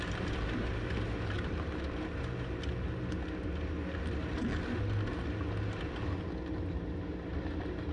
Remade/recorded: recorded